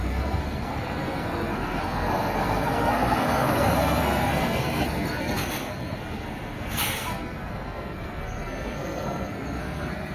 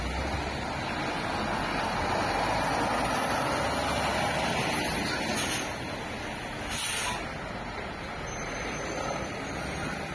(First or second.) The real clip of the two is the second